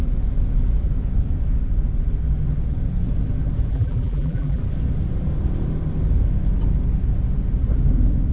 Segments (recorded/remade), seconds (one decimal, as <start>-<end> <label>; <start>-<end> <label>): 0.0-3.7 recorded; 3.7-4.6 remade; 4.6-8.3 recorded

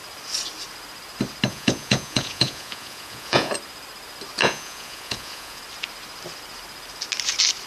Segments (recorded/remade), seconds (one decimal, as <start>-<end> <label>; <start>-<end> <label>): 0.0-1.5 recorded; 1.5-3.5 remade; 3.5-4.4 recorded; 4.4-5.6 remade; 5.6-7.7 recorded

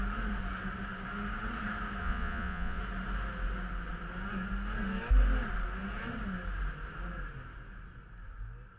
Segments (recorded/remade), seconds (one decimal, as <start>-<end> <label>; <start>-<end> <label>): 0.0-2.0 recorded; 2.0-2.8 remade; 2.8-8.8 recorded

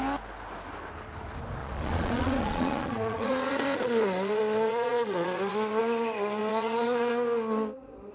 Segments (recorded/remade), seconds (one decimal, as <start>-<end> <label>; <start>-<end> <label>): 0.0-1.6 recorded; 1.6-5.8 remade; 5.8-6.4 recorded; 6.4-7.1 remade; 7.1-8.1 recorded

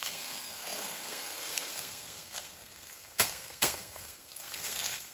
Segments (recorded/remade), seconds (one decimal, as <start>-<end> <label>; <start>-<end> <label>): 0.0-5.1 remade